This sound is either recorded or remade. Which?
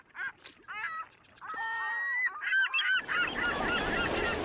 recorded